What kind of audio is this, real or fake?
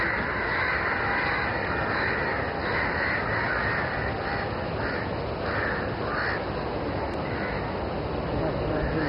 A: real